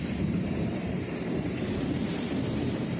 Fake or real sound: fake